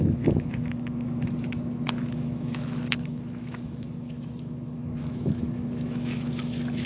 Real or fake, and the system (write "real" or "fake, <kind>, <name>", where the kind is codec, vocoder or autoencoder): fake, autoencoder, DAC-VAE